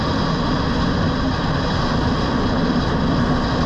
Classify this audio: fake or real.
real